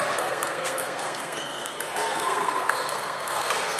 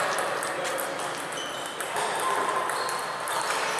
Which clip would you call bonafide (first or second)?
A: second